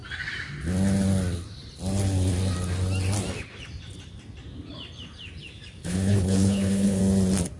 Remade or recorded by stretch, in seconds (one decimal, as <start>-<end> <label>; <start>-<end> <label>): 0.0-5.8 recorded; 5.8-7.0 remade; 7.0-7.6 recorded